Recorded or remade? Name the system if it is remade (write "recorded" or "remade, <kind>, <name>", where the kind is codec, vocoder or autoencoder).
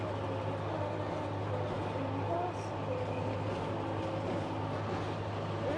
recorded